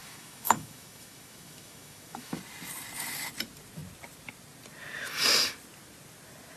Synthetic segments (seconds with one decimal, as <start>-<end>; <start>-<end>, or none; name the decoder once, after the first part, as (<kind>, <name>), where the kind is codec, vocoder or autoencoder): 0.0-2.4 (autoencoder, DAC-VAE)